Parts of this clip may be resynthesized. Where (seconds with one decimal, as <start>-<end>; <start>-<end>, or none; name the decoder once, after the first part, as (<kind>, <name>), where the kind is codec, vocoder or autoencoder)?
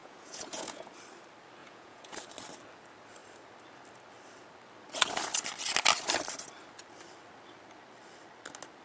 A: 0.0-0.9 (vocoder, Vocos); 1.6-2.2